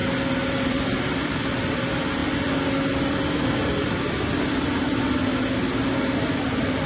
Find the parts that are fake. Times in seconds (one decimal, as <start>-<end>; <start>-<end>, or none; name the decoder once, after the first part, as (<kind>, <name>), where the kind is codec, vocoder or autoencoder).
0.0-2.2 (vocoder, BigVGAN v2); 6.2-6.9

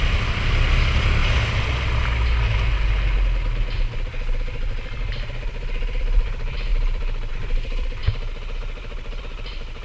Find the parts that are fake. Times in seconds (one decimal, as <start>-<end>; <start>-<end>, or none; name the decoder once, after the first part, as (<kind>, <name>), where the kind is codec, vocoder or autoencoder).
0.0-1.2 (vocoder, BigVGAN v2); 4.3-9.8